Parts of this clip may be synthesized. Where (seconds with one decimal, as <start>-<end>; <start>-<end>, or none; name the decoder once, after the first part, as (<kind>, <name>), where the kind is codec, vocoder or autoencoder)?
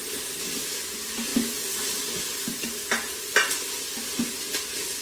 none